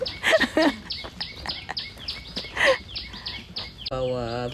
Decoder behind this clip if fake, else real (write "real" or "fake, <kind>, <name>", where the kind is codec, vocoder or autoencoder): real